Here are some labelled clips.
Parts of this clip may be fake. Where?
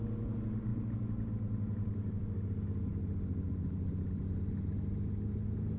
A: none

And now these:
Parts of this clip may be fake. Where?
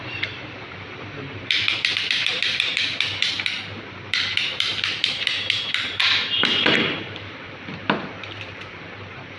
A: 0.0-9.4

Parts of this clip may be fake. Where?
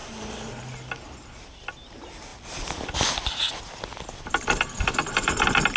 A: 0.0-0.6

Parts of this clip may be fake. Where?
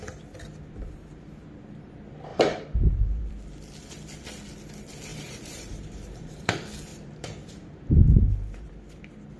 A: 2.3-3.3; 5.1-6.5; 6.9-8.7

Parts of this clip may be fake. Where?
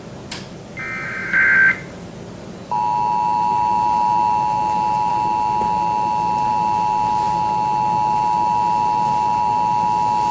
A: none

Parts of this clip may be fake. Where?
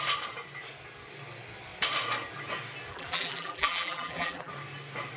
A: 2.9-4.5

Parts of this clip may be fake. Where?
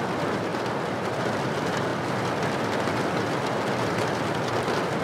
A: 0.5-1.1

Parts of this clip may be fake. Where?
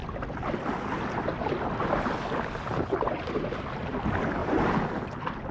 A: 2.7-3.8; 4.4-5.0